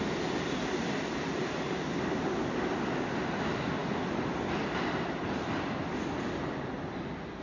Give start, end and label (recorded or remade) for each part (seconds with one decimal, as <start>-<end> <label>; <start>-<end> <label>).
0.0-7.4 recorded